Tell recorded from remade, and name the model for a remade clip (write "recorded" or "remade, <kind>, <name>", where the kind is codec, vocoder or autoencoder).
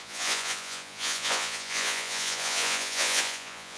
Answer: remade, vocoder, Vocos